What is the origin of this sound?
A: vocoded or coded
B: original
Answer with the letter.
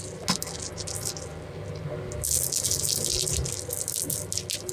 B